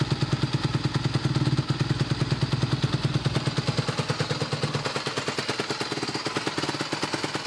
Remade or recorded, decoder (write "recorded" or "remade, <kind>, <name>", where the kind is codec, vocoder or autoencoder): recorded